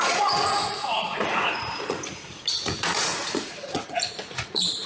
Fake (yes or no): yes